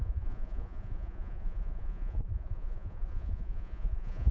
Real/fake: fake